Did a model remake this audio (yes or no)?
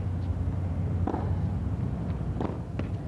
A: no